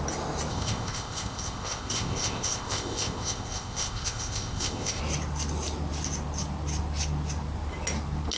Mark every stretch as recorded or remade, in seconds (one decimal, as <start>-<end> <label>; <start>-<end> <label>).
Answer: 0.0-0.5 recorded; 0.5-5.0 remade; 5.0-8.4 recorded